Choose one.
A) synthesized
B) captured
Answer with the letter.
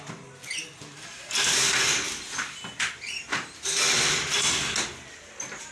B